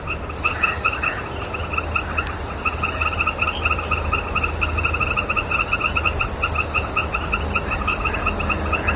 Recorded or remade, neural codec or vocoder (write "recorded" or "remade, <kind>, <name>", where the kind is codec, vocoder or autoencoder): recorded